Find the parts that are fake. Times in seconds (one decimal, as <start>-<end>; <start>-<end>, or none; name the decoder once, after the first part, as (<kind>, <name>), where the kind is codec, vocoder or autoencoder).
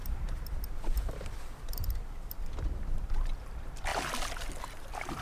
0.0-3.9 (vocoder, BigVGAN v2)